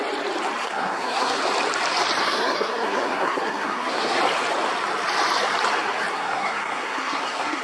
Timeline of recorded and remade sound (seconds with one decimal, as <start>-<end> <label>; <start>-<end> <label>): 0.0-0.6 recorded; 0.6-1.4 remade; 1.4-2.2 recorded; 2.2-4.2 remade; 4.2-6.1 recorded; 6.1-7.6 remade